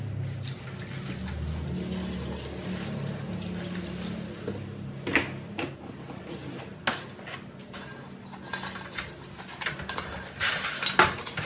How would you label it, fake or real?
real